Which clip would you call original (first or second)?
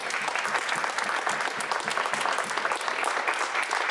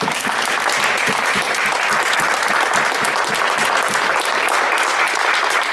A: first